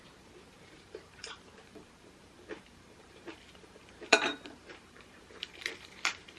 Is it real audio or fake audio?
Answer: fake